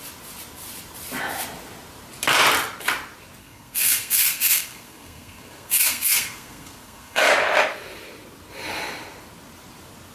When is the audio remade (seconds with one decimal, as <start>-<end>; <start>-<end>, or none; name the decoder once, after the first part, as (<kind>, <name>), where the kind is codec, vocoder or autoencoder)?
3.4-7.3 (codec, SNAC)